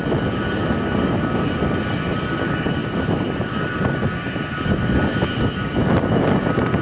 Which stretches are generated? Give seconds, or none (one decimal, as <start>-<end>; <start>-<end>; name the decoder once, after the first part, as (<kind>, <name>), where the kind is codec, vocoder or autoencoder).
2.8-3.5 (vocoder, BigVGAN v2)